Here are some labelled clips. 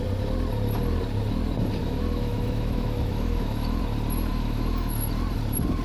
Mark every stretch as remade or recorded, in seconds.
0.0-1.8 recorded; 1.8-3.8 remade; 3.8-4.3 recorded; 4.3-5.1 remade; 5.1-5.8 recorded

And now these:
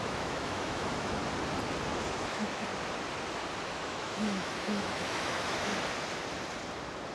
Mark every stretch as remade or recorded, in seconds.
0.0-1.2 remade; 1.2-2.2 recorded; 2.2-2.7 remade; 2.7-3.7 recorded; 3.7-5.7 remade; 5.7-7.1 recorded

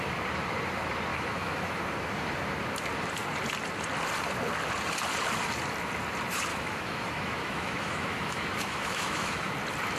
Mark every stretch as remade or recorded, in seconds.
0.0-1.1 recorded; 1.1-1.8 remade; 1.8-6.5 recorded; 6.5-9.5 remade; 9.5-10.0 recorded

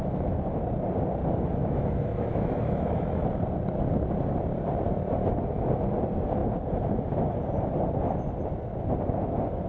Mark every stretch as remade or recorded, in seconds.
0.0-1.6 recorded; 1.6-3.3 remade; 3.3-9.7 recorded